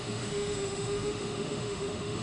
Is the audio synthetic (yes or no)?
yes